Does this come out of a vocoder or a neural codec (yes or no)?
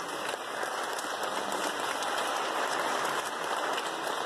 no